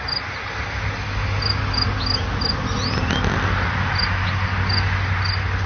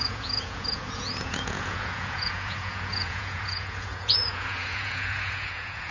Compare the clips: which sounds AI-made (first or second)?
second